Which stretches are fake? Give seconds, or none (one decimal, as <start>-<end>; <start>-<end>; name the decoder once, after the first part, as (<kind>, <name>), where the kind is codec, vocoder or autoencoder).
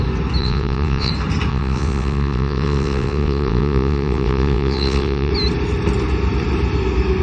0.4-1.1 (vocoder, WaveNeXt); 1.5-5.3